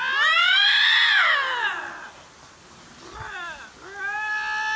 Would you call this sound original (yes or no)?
yes